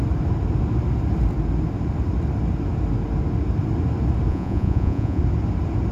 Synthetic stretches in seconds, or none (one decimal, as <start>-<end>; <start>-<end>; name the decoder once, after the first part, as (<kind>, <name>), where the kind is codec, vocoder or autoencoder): 4.3-5.2 (vocoder, Vocos)